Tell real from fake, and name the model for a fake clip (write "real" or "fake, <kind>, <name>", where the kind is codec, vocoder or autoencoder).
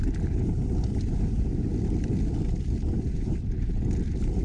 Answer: real